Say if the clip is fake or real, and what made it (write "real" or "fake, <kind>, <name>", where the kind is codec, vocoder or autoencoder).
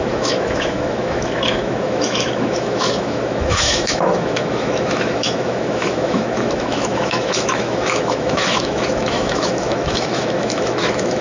fake, autoencoder, DAC-VAE